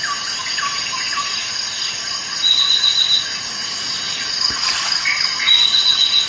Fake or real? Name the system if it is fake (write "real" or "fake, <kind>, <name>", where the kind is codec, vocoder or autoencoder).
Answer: real